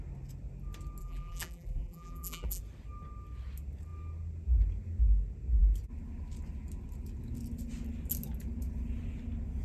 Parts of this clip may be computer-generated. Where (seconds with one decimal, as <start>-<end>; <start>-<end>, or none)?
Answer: 1.0-2.6